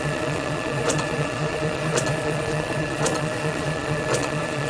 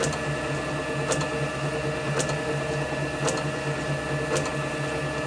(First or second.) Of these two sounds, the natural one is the second